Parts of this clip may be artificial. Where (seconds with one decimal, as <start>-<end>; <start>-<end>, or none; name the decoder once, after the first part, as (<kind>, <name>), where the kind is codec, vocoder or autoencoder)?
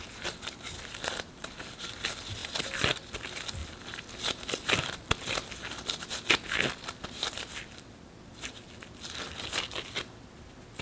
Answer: none